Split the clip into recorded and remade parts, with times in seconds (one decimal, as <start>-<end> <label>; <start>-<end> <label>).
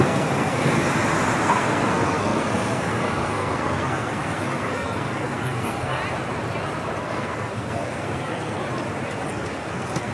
0.0-0.8 remade; 0.8-1.4 recorded; 1.4-6.0 remade; 6.0-7.0 recorded; 7.0-8.6 remade; 8.6-9.3 recorded; 9.3-10.1 remade